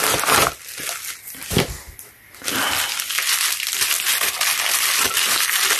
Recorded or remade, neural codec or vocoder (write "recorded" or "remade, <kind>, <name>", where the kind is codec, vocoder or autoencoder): recorded